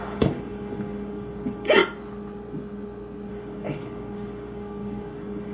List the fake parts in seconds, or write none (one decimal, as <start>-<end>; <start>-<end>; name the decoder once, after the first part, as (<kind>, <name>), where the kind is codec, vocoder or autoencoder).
0.0-1.8 (codec, DAC); 3.3-5.5